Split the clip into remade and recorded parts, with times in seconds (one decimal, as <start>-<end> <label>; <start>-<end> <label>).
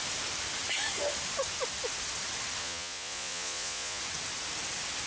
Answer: 0.0-2.6 recorded; 2.6-4.0 remade; 4.0-5.1 recorded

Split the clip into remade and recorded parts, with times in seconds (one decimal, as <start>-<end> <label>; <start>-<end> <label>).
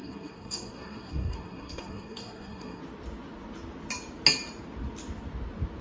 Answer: 0.0-2.8 remade; 2.8-5.8 recorded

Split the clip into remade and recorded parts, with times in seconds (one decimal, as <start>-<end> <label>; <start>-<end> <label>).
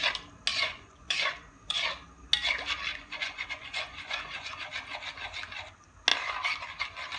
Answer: 0.0-0.5 recorded; 0.5-1.9 remade; 1.9-2.9 recorded; 2.9-4.6 remade; 4.6-7.2 recorded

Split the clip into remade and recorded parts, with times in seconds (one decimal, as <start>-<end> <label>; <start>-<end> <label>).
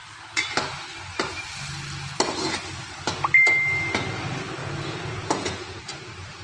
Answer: 0.0-4.6 recorded; 4.6-5.8 remade; 5.8-6.4 recorded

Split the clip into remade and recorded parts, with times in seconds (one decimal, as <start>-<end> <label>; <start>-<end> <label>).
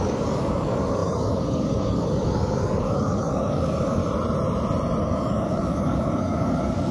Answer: 0.0-4.0 remade; 4.0-5.0 recorded; 5.0-6.9 remade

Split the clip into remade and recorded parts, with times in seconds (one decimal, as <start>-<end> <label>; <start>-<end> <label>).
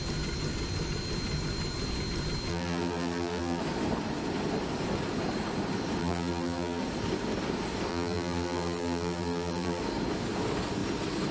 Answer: 0.0-2.5 recorded; 2.5-3.6 remade; 3.6-6.0 recorded; 6.0-6.8 remade; 6.8-7.9 recorded; 7.9-9.8 remade; 9.8-11.3 recorded